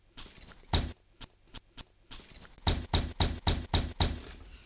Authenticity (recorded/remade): recorded